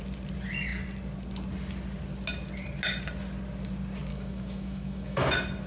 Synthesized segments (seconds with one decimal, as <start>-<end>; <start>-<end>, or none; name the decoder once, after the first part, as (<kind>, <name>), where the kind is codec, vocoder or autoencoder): 4.1-5.3 (autoencoder, DAC-VAE)